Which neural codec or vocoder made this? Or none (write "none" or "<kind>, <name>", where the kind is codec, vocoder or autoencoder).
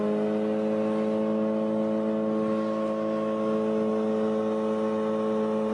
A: none